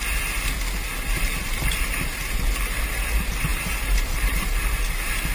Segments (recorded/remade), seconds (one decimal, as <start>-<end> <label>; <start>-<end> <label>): 0.0-3.5 recorded; 3.5-4.5 remade; 4.5-5.3 recorded